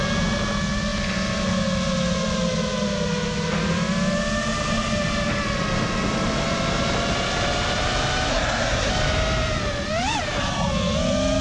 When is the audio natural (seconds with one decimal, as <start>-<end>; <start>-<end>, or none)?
0.0-8.3; 8.9-11.4